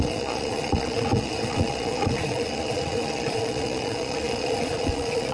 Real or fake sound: fake